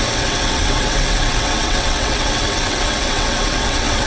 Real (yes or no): no